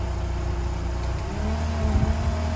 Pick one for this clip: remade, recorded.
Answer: recorded